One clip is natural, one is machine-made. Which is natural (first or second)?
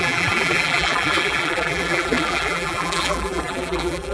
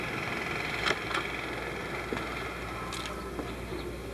second